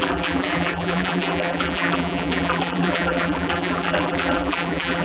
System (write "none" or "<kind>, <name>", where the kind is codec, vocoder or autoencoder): vocoder, BigVGAN v2